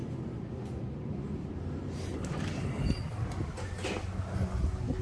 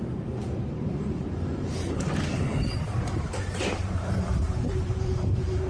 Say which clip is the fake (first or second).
second